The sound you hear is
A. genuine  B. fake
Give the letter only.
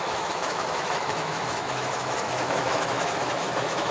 B